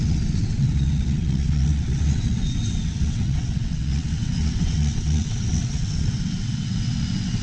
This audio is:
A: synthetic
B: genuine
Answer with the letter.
A